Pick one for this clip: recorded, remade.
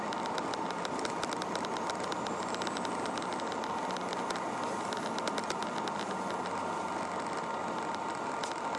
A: recorded